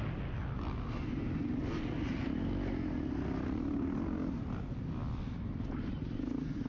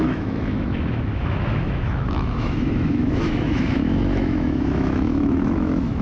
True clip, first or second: first